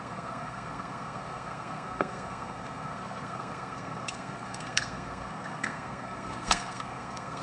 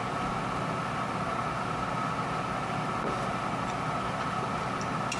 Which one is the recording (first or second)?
second